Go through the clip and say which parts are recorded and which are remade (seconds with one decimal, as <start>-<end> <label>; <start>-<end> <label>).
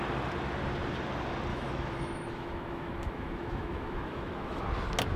0.0-1.5 recorded; 1.5-4.6 remade; 4.6-5.2 recorded